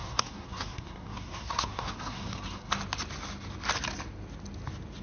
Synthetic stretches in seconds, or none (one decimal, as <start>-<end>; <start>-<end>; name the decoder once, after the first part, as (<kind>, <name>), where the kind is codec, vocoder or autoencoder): 0.0-2.7 (codec, SNAC)